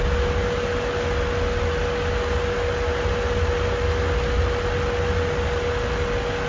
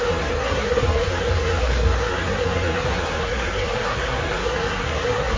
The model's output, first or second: second